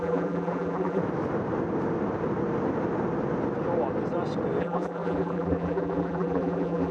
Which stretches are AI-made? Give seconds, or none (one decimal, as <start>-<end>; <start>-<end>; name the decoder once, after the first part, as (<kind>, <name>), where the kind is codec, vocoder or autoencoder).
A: 0.0-1.0 (vocoder, BigVGAN v2); 4.6-6.9